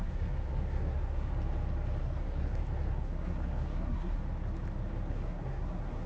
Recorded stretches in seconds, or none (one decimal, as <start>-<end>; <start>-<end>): 1.3-2.0; 4.2-5.1